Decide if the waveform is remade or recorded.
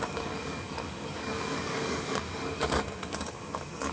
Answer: remade